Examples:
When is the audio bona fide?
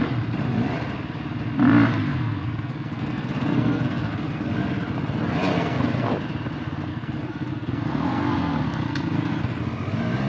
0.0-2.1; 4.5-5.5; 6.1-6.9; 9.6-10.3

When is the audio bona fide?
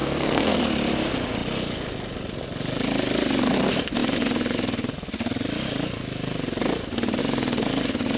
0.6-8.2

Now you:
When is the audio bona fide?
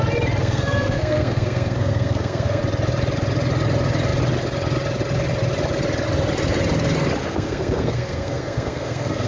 0.0-0.4; 2.6-7.2